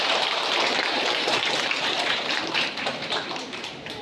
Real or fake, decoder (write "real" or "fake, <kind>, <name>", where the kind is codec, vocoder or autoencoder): fake, vocoder, BigVGAN v2